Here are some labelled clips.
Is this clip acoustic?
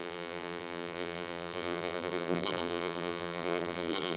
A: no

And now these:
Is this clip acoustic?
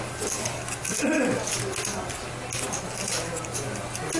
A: yes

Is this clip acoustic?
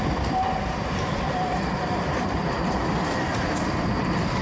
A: no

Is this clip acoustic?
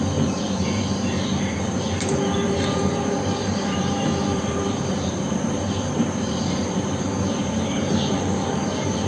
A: no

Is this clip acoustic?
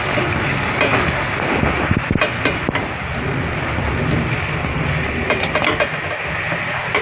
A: yes